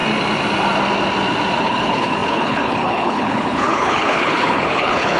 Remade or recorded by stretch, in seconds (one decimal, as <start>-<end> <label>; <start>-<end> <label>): 0.0-1.6 recorded; 1.6-5.2 remade